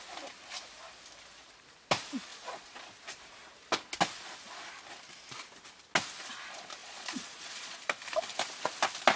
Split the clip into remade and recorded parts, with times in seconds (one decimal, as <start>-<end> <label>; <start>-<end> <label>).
0.0-2.3 recorded; 2.3-2.9 remade; 2.9-6.8 recorded; 6.8-7.8 remade; 7.8-9.2 recorded